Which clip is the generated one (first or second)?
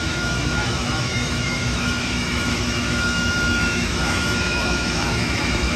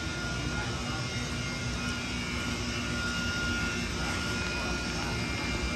first